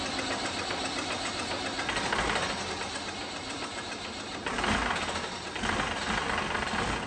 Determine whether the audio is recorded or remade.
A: recorded